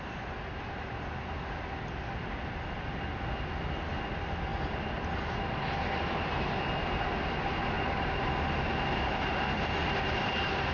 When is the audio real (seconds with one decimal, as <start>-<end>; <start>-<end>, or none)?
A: 0.0-10.7